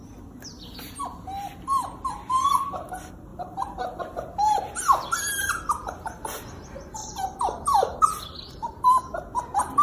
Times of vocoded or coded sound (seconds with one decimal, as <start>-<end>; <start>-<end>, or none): 1.7-2.2; 3.3-4.0; 7.0-8.0